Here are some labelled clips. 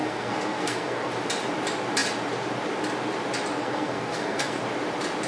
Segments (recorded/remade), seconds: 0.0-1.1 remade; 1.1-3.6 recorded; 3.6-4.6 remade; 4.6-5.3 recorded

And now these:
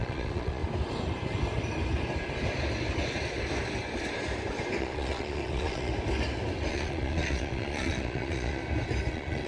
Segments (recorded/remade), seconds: 0.0-0.6 remade; 0.6-4.8 recorded; 4.8-5.9 remade; 5.9-6.7 recorded; 6.7-8.6 remade; 8.6-9.1 recorded; 9.1-9.5 remade

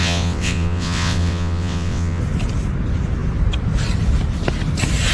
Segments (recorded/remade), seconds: 0.0-2.2 remade; 2.2-5.1 recorded